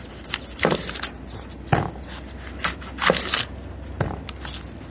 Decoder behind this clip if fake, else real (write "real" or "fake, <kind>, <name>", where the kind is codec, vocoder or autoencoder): real